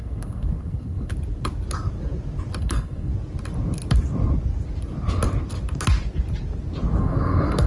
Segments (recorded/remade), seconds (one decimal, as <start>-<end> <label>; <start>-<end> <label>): 0.0-1.1 remade; 1.1-2.6 recorded; 2.6-3.1 remade; 3.1-7.0 recorded; 7.0-7.7 remade